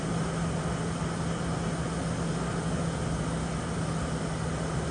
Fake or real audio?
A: real